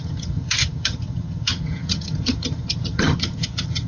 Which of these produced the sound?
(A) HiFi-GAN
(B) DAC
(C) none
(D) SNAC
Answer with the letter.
A